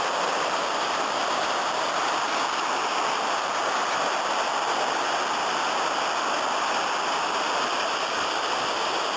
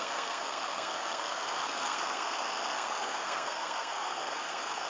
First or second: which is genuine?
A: first